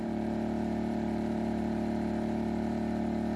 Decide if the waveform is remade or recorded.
remade